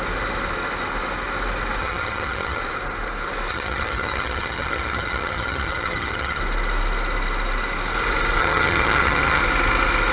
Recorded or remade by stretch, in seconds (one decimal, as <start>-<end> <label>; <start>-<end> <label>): 0.0-1.8 recorded; 1.8-2.6 remade; 2.6-3.5 recorded; 3.5-6.4 remade; 6.4-8.4 recorded; 8.4-9.4 remade; 9.4-10.1 recorded